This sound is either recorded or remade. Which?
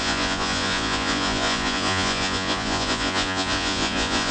remade